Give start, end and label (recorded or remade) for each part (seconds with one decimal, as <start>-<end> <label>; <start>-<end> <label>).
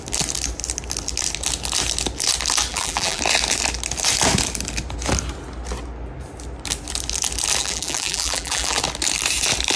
0.0-2.7 recorded; 2.7-3.2 remade; 3.2-7.6 recorded; 7.6-8.8 remade; 8.8-9.8 recorded